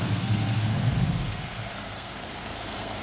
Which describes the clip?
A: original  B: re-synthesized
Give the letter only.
B